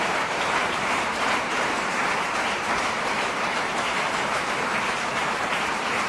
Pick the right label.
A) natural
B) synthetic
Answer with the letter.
B